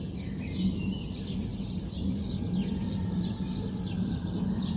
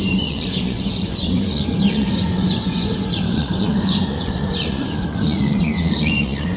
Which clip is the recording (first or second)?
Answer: first